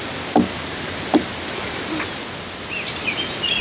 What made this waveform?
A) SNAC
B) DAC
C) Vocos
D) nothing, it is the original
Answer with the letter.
D